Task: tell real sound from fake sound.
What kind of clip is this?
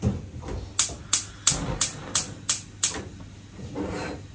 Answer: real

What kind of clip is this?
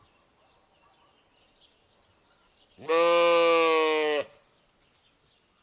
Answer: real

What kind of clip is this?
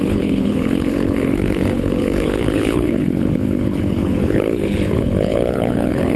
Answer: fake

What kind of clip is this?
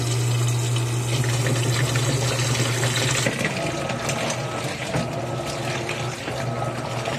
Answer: real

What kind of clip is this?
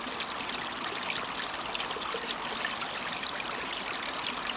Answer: real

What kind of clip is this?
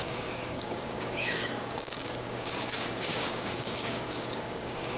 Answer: fake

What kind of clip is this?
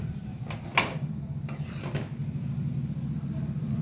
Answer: real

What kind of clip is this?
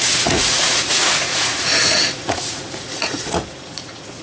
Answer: fake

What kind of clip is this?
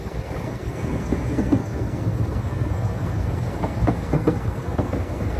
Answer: fake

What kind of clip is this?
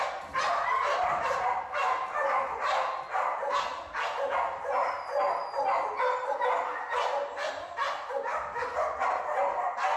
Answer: real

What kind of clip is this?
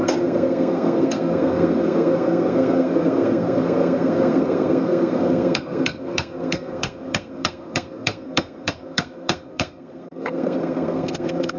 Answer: fake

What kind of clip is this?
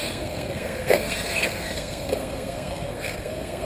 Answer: fake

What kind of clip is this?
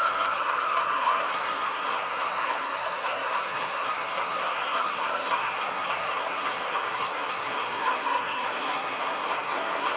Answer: fake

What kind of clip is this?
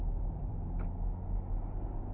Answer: real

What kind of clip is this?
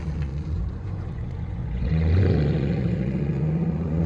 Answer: fake